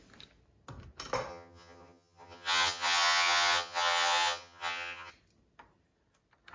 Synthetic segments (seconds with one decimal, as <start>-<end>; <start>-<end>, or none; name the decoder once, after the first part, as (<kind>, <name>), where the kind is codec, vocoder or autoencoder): 1.3-5.1 (vocoder, HiFi-GAN)